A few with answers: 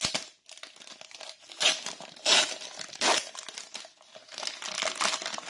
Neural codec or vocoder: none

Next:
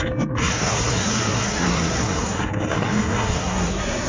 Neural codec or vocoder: codec, SNAC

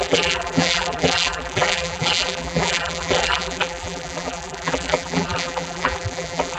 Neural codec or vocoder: vocoder, BigVGAN v2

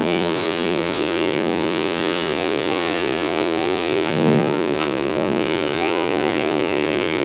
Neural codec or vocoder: vocoder, Vocos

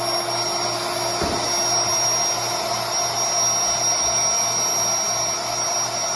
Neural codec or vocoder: none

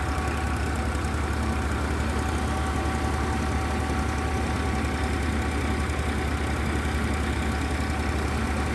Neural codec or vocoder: none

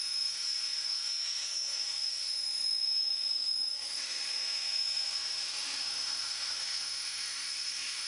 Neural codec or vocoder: autoencoder, DAC-VAE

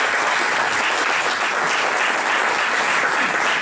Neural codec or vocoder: none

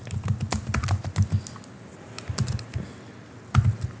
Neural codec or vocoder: none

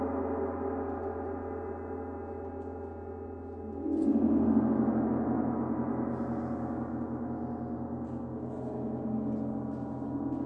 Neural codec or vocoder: none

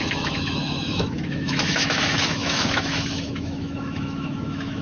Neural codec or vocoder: autoencoder, DAC-VAE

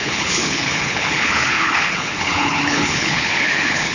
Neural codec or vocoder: codec, HILCodec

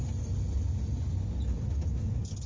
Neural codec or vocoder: none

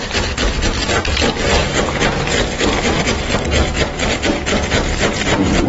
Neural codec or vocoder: none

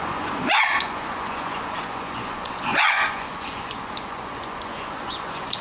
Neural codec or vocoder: vocoder, Vocos